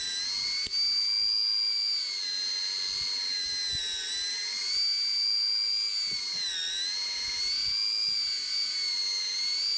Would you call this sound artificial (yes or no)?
no